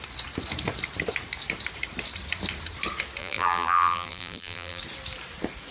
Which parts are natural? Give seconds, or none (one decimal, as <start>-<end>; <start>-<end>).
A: 0.0-3.2; 4.8-5.7